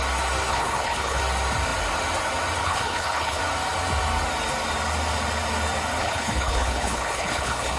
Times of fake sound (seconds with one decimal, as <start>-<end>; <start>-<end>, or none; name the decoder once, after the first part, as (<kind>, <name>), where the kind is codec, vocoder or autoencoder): 0.5-1.2 (codec, HILCodec); 2.6-3.4; 6.0-7.8

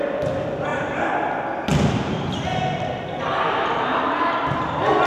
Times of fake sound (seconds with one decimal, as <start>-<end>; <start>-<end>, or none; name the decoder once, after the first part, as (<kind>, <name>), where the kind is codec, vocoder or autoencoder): 0.7-1.4 (vocoder, BigVGAN v2)

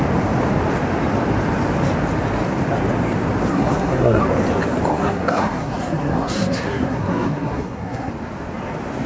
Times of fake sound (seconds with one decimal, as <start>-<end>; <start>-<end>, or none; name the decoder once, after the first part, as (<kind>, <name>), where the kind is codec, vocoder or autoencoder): 3.5-4.2 (codec, SNAC); 4.9-8.1

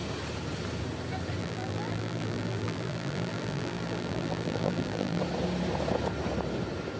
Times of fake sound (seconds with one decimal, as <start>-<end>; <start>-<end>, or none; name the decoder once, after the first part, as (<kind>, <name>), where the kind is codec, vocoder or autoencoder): 1.4-5.2 (vocoder, BigVGAN v2)

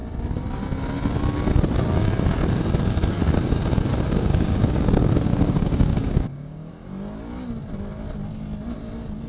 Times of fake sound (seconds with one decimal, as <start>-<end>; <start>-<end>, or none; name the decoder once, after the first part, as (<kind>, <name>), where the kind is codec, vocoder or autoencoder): 3.9-6.7 (codec, DAC)

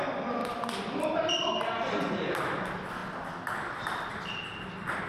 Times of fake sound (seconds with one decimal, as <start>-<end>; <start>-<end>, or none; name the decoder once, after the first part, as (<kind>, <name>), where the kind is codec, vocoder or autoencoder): 0.0-3.0 (vocoder, BigVGAN v2); 4.1-5.1

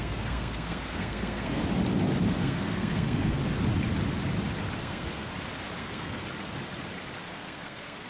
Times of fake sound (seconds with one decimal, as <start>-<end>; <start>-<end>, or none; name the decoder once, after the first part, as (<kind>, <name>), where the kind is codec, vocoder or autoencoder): 0.0-1.6 (codec, SNAC); 2.3-3.4; 4.8-5.3; 5.8-6.2; 7.3-8.1